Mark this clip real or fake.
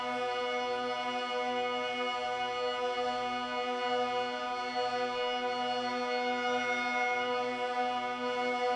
real